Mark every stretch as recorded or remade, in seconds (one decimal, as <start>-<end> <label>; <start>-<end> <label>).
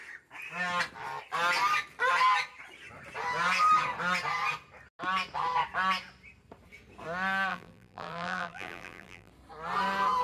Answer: 0.0-7.5 recorded; 7.5-9.3 remade; 9.3-10.2 recorded